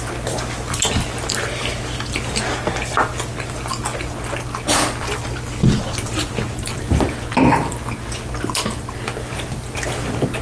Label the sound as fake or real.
real